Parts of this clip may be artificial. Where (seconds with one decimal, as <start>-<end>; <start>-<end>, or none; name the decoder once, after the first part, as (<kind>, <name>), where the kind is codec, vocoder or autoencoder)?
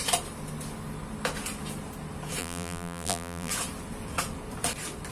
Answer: 2.4-3.5 (vocoder, BigVGAN v2)